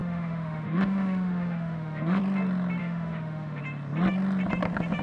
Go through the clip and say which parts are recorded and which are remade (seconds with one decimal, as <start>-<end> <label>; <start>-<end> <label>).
0.0-2.2 remade; 2.2-2.8 recorded; 2.8-3.6 remade; 3.6-5.0 recorded